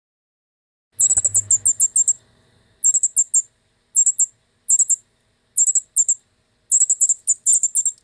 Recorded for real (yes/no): yes